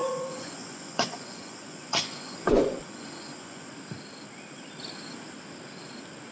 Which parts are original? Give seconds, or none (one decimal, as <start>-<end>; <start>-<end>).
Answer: 3.7-6.3